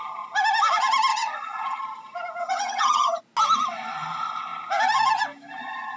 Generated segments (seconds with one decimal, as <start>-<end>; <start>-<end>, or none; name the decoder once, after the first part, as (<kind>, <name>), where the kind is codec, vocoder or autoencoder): 1.1-1.8 (vocoder, HiFi-GAN); 2.4-3.2